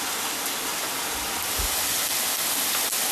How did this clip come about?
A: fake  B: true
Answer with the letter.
B